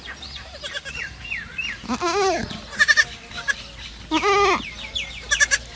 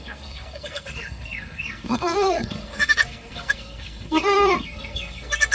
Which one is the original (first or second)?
first